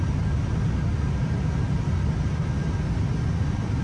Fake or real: real